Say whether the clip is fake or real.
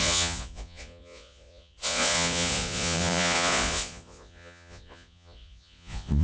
fake